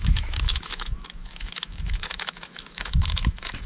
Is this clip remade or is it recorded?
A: remade